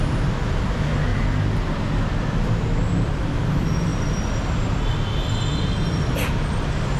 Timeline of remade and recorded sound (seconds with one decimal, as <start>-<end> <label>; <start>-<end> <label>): 0.0-7.0 recorded